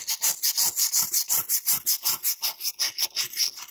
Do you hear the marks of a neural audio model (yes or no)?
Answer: no